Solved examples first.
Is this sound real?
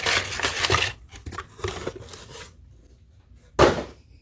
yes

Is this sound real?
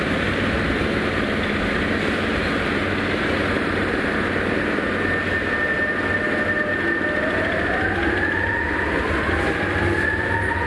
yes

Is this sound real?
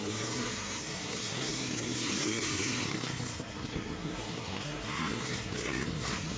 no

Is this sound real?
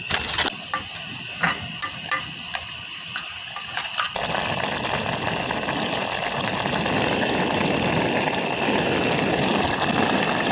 yes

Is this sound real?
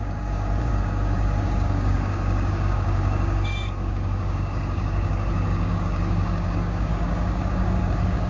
no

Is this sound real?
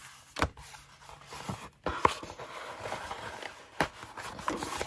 yes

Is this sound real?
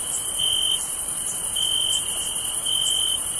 yes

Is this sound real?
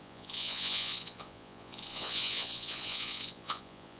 no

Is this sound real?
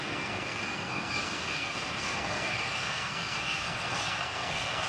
no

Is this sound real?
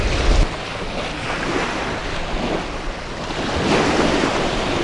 yes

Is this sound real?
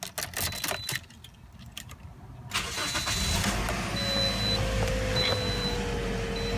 yes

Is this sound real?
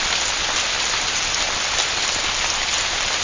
yes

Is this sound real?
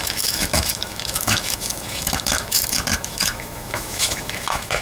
no